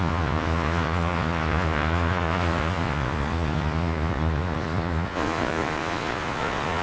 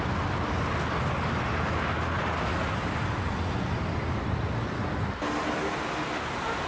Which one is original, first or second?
second